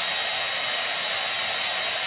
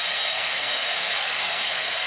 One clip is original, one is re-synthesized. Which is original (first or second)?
first